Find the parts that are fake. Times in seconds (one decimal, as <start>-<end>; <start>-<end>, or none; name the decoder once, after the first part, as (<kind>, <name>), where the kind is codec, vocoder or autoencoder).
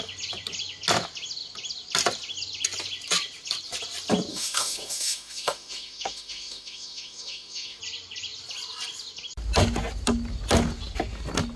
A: 4.3-7.8 (autoencoder, DAC-VAE)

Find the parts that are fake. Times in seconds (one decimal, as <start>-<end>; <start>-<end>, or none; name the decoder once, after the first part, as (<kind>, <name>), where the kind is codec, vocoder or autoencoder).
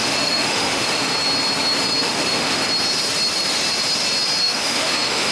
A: 0.0-1.1 (autoencoder, DAC-VAE); 2.0-2.6; 4.4-5.3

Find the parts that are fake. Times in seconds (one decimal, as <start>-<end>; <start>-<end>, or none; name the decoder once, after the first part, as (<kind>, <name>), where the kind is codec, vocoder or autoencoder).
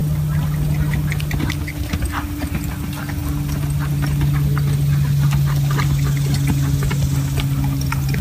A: none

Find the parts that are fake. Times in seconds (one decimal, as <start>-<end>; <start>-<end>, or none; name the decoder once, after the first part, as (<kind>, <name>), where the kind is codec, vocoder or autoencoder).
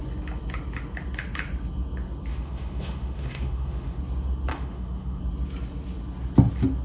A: 2.3-4.0 (autoencoder, DAC-VAE); 4.5-5.2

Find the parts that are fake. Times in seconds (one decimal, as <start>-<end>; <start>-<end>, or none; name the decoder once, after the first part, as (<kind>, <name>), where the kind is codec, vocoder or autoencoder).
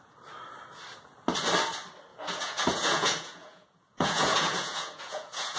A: 2.1-5.6 (vocoder, Vocos)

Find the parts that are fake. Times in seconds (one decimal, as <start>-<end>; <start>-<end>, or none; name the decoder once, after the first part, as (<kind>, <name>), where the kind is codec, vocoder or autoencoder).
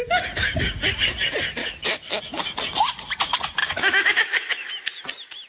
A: 1.6-2.2 (autoencoder, DAC-VAE); 3.6-4.7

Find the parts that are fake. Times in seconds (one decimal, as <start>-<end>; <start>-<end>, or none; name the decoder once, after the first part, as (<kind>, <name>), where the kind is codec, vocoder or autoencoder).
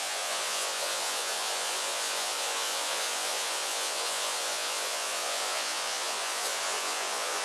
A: 0.0-7.4 (vocoder, Vocos)